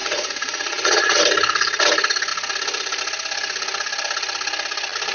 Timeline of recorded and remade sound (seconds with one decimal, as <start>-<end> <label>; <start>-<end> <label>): 0.0-1.2 remade; 1.2-5.1 recorded